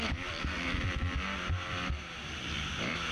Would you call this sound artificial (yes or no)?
no